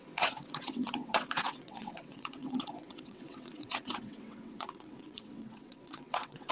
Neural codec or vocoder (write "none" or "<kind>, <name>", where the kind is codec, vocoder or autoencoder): vocoder, WaveNeXt